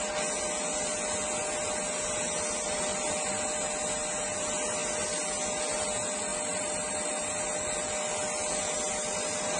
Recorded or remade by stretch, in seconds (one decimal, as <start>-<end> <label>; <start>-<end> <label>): 0.0-9.6 recorded